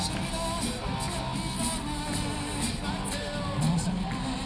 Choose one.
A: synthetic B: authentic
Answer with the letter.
B